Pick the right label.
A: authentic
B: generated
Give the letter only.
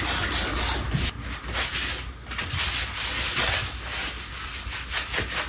A